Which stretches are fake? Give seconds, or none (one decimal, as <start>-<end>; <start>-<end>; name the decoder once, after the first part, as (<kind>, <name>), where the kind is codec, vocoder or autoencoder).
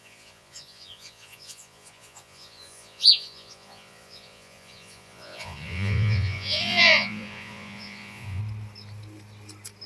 0.0-8.4 (vocoder, Vocos)